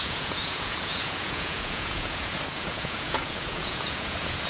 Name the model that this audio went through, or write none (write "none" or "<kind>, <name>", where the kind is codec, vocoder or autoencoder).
vocoder, Vocos